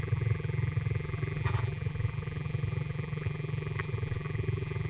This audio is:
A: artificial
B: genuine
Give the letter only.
A